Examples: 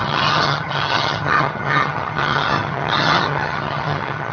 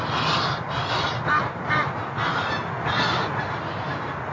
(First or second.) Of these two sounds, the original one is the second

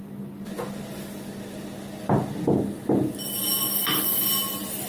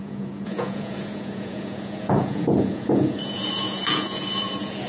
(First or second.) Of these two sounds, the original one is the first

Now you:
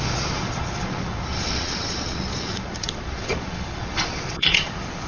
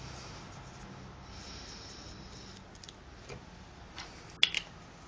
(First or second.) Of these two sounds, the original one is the second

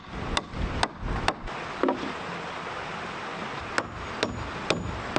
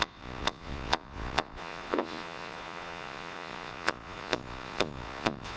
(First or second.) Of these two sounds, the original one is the first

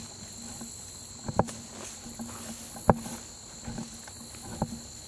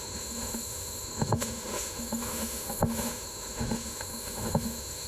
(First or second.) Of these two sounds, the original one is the first